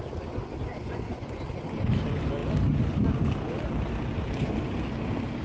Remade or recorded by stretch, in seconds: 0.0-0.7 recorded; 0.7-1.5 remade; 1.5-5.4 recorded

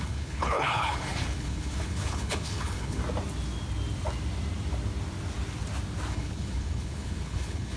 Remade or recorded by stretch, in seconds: 0.0-3.0 remade; 3.0-6.1 recorded; 6.1-7.8 remade